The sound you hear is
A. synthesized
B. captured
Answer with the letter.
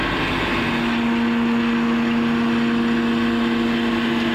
B